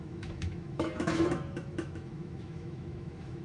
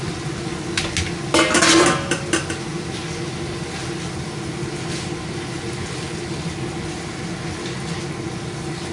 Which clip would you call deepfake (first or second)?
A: first